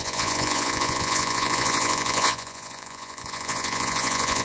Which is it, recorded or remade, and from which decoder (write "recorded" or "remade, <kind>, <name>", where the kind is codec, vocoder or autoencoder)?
remade, vocoder, Vocos